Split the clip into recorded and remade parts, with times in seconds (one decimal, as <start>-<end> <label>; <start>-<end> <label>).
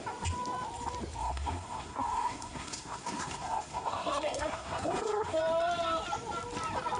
0.0-1.2 recorded; 1.2-5.4 remade; 5.4-7.0 recorded